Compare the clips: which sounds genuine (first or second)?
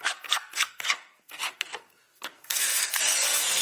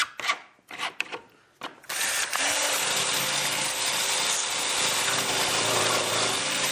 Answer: second